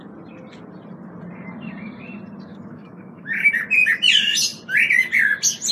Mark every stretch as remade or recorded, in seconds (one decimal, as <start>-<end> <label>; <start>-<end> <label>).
0.0-2.5 recorded; 2.5-3.5 remade; 3.5-5.7 recorded